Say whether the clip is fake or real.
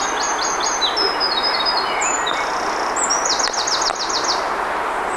real